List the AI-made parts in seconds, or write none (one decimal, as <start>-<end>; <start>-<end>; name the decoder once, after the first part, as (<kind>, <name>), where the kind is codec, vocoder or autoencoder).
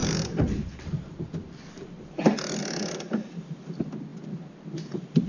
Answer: none